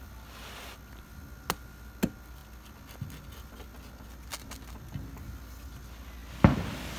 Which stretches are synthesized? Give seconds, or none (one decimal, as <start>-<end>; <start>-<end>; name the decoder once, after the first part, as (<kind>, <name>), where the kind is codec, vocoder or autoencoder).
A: none